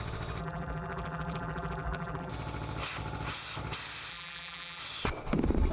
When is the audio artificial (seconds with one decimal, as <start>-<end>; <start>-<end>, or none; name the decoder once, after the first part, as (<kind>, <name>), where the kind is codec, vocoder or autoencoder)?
0.4-2.3 (vocoder, BigVGAN v2); 4.1-4.8